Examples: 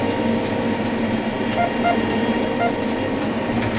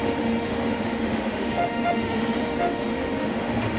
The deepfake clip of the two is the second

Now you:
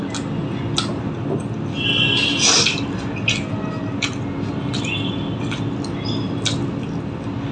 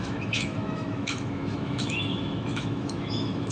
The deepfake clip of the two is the second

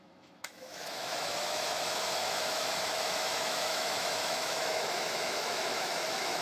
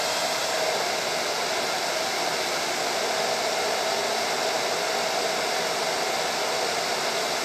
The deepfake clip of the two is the first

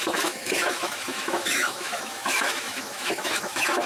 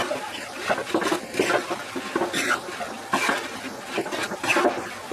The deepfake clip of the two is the first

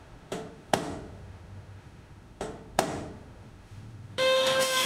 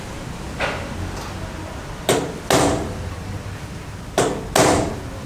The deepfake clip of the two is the first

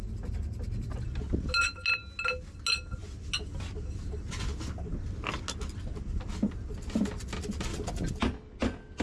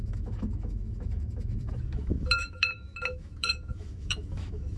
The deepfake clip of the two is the second